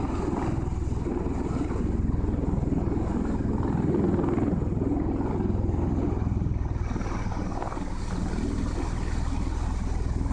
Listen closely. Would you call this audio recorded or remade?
recorded